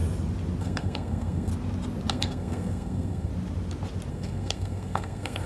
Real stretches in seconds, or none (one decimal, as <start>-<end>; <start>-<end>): 0.0-0.6; 1.5-2.1; 3.3-4.1